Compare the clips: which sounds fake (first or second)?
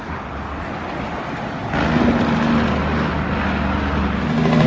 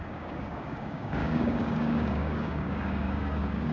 second